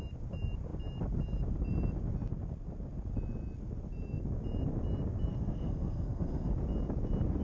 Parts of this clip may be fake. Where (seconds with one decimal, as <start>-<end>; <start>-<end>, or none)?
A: 5.3-6.5